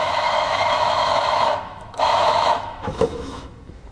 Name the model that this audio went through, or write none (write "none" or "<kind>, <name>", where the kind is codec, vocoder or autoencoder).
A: autoencoder, DAC-VAE